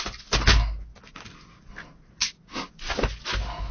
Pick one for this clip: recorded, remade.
recorded